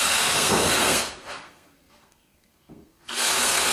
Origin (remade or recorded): remade